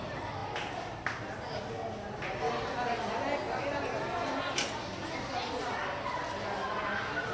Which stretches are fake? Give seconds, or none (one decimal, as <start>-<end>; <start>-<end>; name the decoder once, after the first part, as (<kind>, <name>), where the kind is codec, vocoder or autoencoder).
none